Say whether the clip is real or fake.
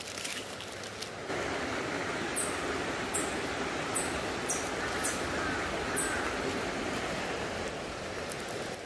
real